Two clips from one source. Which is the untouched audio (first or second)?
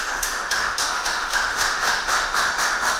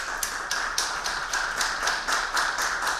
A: second